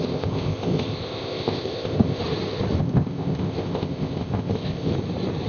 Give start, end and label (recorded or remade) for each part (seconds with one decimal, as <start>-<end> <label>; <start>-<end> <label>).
0.0-2.2 remade; 2.2-2.8 recorded; 2.8-4.9 remade; 4.9-5.5 recorded